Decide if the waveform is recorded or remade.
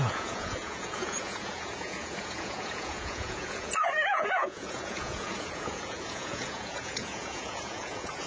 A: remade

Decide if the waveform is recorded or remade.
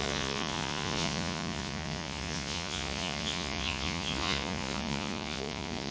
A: remade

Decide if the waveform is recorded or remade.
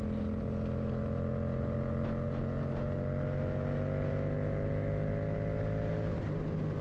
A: recorded